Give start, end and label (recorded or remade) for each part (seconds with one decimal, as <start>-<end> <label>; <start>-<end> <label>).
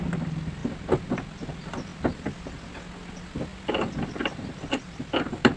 0.0-0.6 remade; 0.6-1.1 recorded; 1.1-1.9 remade; 1.9-3.1 recorded; 3.1-5.6 remade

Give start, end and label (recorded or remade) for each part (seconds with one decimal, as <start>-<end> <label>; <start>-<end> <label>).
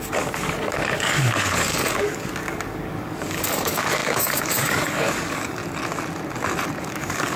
0.0-5.6 remade; 5.6-6.8 recorded; 6.8-7.4 remade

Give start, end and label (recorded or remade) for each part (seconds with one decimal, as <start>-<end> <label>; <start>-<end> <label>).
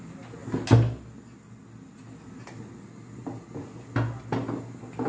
0.0-5.1 recorded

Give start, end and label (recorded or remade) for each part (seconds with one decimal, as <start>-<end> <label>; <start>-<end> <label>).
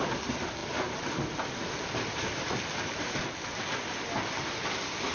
0.0-5.1 recorded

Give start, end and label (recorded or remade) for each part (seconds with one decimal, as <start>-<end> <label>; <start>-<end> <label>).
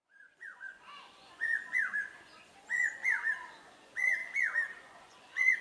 0.0-5.6 remade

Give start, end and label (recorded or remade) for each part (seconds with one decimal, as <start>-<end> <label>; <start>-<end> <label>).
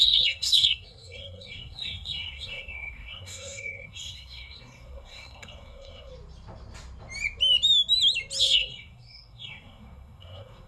0.0-6.1 remade; 6.1-8.4 recorded; 8.4-10.7 remade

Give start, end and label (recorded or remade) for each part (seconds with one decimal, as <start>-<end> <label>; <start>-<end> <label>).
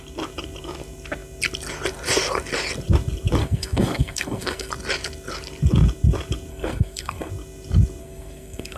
0.0-3.4 recorded; 3.4-4.7 remade; 4.7-6.5 recorded; 6.5-7.3 remade; 7.3-8.0 recorded; 8.0-8.8 remade